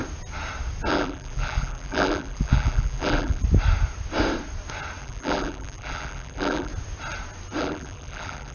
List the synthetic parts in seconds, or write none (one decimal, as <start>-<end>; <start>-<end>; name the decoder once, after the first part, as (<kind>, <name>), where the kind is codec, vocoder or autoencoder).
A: 0.9-3.4 (vocoder, BigVGAN v2); 5.0-6.7; 7.6-8.5